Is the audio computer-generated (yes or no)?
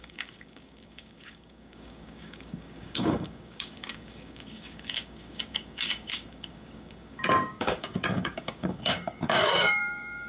yes